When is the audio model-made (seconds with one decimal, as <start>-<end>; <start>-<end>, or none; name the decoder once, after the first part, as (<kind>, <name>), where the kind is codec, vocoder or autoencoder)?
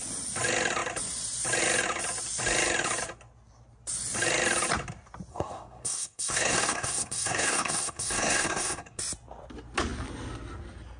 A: 5.3-9.0 (codec, SNAC)